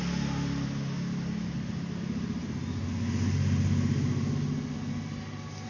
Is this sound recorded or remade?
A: recorded